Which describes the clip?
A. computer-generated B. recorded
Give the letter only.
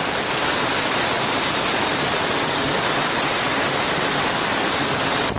B